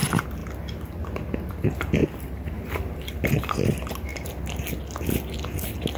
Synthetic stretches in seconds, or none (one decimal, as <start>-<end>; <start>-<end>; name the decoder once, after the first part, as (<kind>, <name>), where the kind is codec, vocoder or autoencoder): none